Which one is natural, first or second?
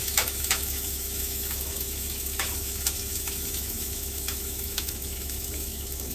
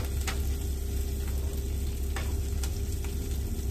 second